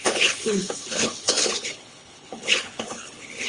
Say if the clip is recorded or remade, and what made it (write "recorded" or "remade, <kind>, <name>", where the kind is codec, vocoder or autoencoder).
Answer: remade, codec, HILCodec